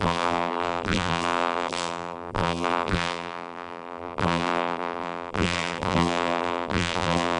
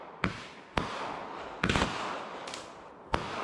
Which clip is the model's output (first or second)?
first